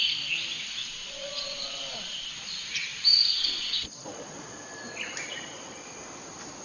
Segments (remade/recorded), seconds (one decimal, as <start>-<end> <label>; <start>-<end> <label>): 0.0-0.8 recorded; 0.8-2.3 remade; 2.3-3.3 recorded; 3.3-6.0 remade; 6.0-6.6 recorded